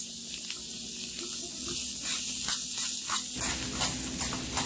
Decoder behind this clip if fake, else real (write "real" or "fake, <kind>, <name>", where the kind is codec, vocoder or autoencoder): real